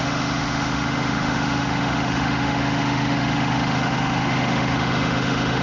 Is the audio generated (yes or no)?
yes